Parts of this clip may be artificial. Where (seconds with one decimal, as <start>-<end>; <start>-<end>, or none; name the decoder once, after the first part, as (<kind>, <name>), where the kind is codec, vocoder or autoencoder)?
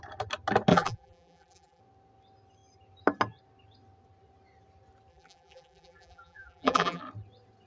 0.7-1.8 (vocoder, BigVGAN v2); 5.1-7.0